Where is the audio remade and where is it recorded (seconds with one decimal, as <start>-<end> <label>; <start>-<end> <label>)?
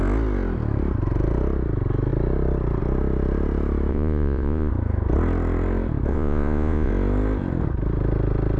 0.0-3.9 recorded; 3.9-4.7 remade; 4.7-6.1 recorded; 6.1-6.9 remade; 6.9-8.6 recorded